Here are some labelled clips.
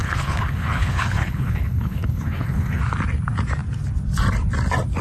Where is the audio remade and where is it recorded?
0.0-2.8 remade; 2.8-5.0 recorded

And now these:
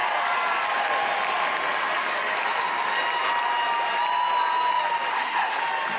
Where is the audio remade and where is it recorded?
0.0-5.1 recorded; 5.1-5.6 remade; 5.6-6.0 recorded

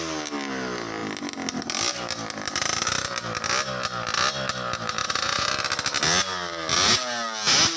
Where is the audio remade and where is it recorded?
0.0-5.0 recorded; 5.0-5.5 remade; 5.5-7.8 recorded

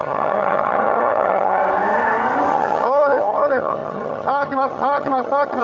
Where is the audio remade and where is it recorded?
0.0-1.6 remade; 1.6-2.5 recorded; 2.5-5.6 remade

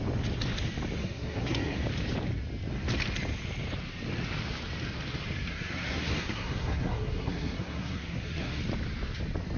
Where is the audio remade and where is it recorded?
0.0-1.0 recorded; 1.0-1.8 remade; 1.8-5.5 recorded; 5.5-8.6 remade; 8.6-9.6 recorded